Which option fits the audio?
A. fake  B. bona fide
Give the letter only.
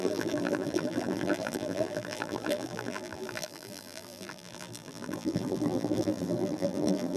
A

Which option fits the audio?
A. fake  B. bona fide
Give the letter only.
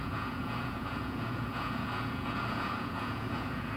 A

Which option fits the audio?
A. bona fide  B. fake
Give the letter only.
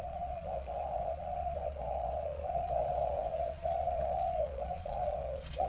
B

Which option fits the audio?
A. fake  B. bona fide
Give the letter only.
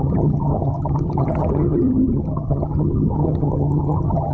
A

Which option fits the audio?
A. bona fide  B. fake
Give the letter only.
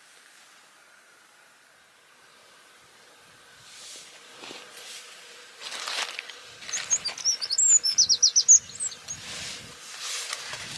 A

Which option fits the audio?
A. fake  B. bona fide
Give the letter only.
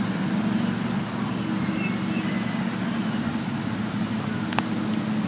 B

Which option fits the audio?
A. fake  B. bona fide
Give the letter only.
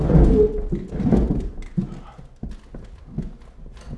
B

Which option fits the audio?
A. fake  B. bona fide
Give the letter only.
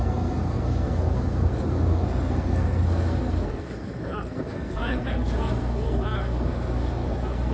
A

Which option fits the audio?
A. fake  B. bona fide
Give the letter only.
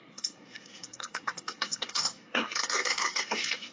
A